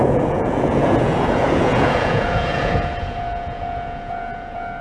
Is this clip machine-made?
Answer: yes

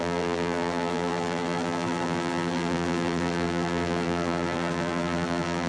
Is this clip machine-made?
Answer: yes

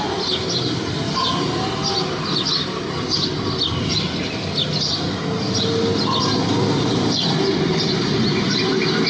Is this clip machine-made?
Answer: no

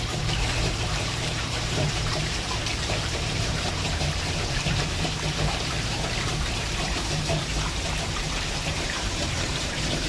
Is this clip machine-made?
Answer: yes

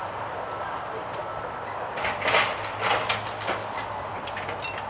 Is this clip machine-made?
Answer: no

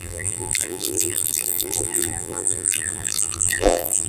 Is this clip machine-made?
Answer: yes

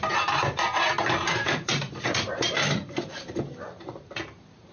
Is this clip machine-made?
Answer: yes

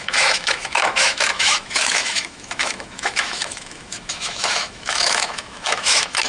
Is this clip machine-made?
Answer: yes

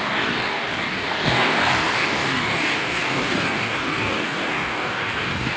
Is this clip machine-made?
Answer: yes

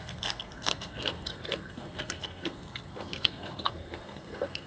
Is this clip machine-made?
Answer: yes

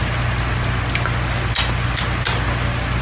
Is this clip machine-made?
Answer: no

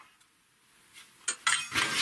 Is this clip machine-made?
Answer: no